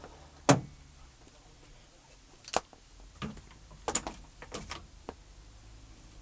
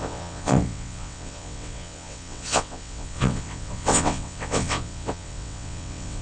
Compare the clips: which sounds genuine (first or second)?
first